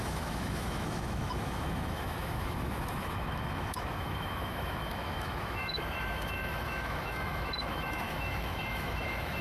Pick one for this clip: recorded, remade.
remade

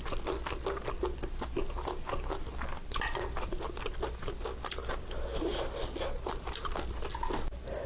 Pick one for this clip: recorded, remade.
recorded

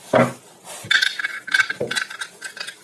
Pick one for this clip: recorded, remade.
recorded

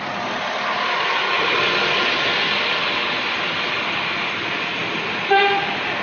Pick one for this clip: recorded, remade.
recorded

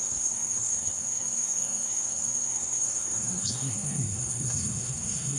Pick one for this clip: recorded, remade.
remade